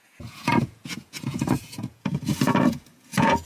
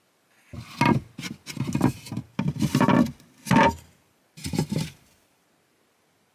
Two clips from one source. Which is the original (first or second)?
second